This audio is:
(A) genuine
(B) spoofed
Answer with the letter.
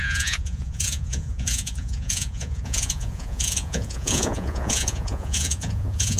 B